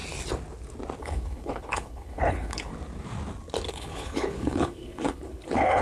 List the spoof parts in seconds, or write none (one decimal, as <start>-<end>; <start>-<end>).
1.0-2.7; 3.7-5.8